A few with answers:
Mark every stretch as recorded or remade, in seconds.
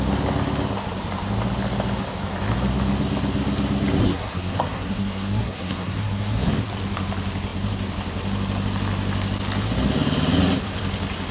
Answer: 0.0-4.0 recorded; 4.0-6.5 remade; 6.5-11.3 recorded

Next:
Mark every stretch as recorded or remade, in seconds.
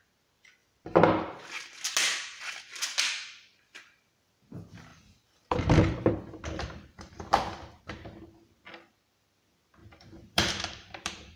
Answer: 0.0-4.9 recorded; 4.9-7.8 remade; 7.8-9.8 recorded; 9.8-11.4 remade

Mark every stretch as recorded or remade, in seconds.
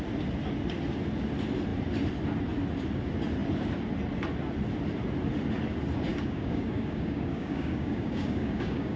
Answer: 0.0-6.1 recorded; 6.1-9.0 remade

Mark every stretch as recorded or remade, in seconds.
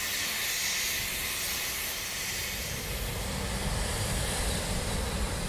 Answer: 0.0-5.5 recorded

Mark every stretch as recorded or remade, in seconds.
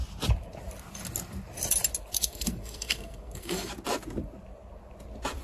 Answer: 0.0-2.1 recorded; 2.1-3.7 remade; 3.7-5.4 recorded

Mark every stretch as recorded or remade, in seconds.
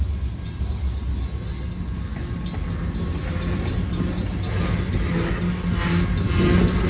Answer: 0.0-6.9 recorded